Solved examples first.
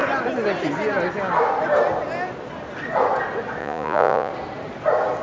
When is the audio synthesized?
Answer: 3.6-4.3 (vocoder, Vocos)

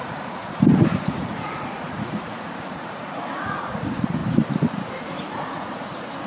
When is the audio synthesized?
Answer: 0.0-4.2 (vocoder, Vocos); 4.9-6.3

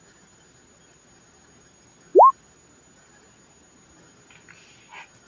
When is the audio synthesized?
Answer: none

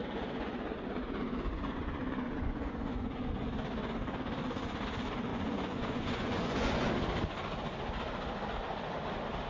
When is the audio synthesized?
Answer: 0.0-3.5 (vocoder, Vocos); 5.3-6.9

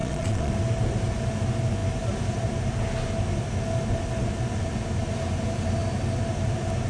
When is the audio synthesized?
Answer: 0.0-0.5 (vocoder, Vocos)